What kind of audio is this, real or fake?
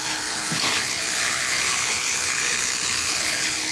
fake